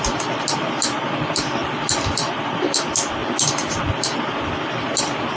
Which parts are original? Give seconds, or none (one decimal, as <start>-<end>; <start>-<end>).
0.0-5.4